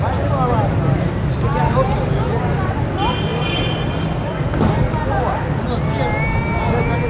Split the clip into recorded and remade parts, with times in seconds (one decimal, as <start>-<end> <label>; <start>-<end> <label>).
0.0-7.1 recorded